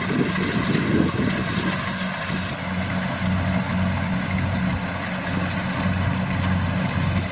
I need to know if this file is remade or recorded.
recorded